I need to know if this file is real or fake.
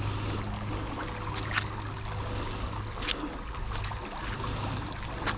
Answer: real